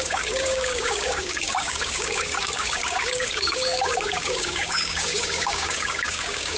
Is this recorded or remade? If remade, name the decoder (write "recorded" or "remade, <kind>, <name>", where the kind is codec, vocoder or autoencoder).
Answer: remade, codec, DAC